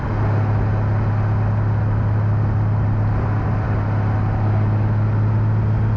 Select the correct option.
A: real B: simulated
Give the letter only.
A